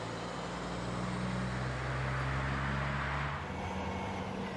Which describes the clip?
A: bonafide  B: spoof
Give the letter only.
A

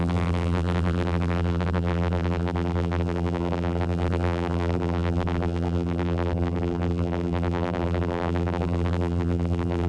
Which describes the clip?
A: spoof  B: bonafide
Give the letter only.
A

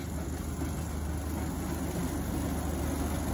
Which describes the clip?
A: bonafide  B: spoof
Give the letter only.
A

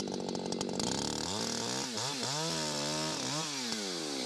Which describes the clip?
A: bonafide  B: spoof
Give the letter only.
A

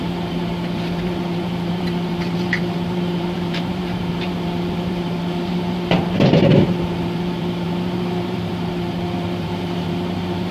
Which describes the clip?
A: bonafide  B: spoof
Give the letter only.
B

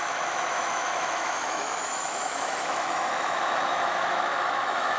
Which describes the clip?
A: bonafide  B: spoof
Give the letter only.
B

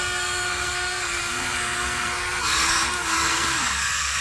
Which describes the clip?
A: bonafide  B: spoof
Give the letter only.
B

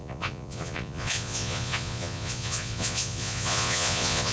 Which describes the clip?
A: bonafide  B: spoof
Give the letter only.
B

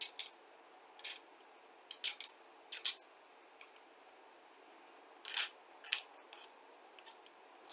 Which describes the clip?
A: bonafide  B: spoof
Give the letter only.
A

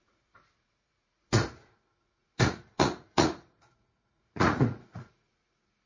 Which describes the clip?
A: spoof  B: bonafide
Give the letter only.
A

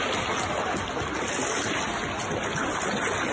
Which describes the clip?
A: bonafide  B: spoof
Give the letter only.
A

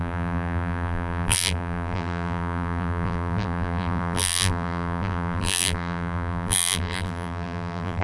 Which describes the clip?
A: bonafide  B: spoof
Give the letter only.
B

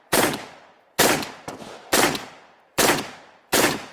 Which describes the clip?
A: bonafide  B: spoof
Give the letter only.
B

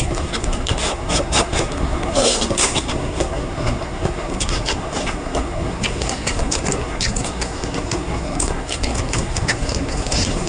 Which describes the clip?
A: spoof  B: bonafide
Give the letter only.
A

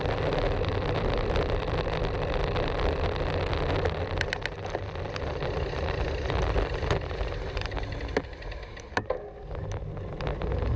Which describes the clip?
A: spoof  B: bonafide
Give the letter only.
B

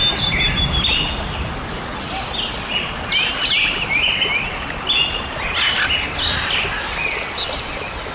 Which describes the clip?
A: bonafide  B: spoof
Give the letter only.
A